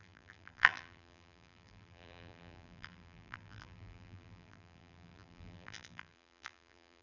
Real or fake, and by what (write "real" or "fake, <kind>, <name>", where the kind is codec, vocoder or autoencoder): fake, vocoder, BigVGAN v2